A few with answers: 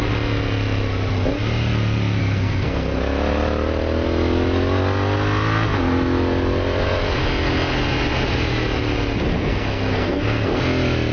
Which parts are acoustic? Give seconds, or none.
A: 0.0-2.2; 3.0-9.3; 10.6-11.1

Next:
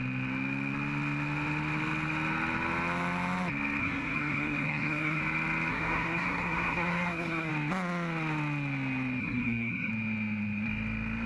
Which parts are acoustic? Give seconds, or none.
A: 0.0-3.8; 5.2-5.7; 7.5-9.2; 9.9-11.3

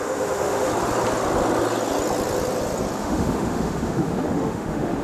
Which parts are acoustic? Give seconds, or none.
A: 0.7-3.0

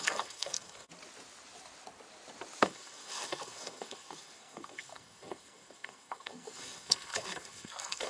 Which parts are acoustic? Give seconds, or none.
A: 0.9-2.6

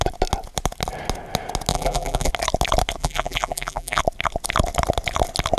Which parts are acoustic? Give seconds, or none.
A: 0.0-1.7; 2.3-3.0; 4.0-5.6